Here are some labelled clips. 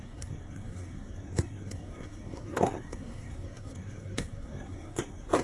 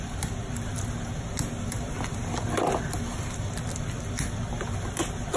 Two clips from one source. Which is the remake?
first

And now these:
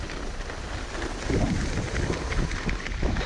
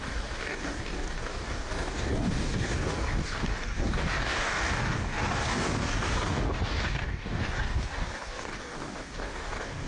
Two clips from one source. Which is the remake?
second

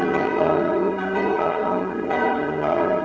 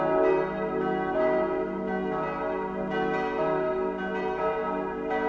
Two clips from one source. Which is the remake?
first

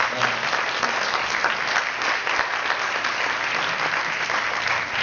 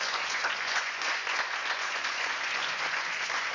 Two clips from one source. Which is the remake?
second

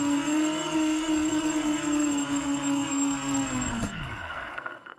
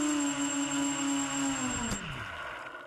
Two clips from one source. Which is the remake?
first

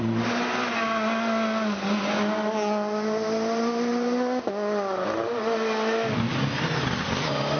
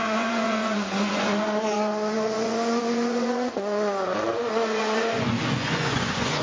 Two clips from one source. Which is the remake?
second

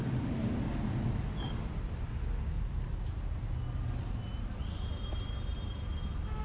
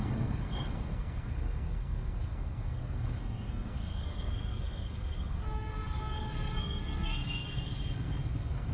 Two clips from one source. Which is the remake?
second